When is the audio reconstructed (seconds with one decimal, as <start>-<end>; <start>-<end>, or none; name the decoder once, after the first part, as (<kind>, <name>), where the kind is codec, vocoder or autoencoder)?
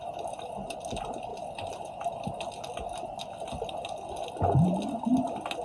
none